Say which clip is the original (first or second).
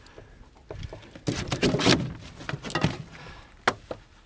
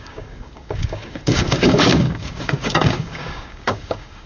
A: first